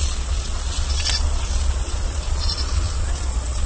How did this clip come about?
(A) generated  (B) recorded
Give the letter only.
A